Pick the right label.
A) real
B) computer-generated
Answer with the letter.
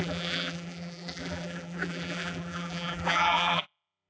B